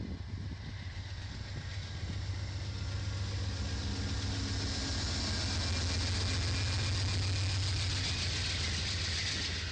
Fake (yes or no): no